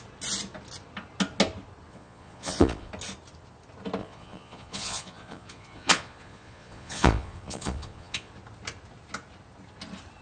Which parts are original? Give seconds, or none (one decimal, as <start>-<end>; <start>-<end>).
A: 0.0-1.9; 2.9-4.0; 8.3-10.2